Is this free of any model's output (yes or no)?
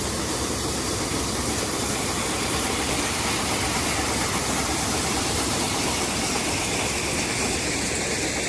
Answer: no